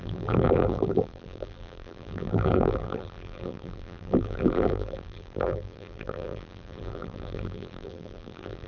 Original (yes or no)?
no